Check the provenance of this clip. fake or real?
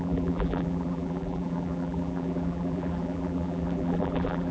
fake